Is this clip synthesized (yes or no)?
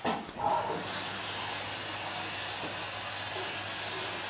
no